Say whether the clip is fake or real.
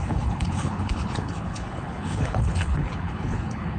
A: fake